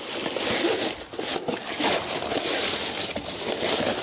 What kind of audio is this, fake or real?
real